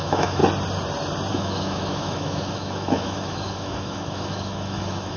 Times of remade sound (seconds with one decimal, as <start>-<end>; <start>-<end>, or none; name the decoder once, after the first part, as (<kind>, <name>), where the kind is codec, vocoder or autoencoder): 0.0-0.4 (autoencoder, DAC-VAE); 1.3-5.2